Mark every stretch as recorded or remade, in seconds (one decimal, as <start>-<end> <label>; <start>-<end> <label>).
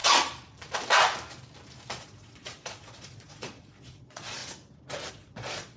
0.0-2.0 recorded; 2.0-4.4 remade; 4.4-5.1 recorded; 5.1-5.8 remade